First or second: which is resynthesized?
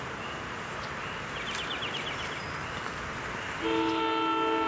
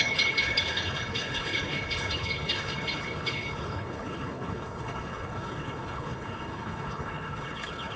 second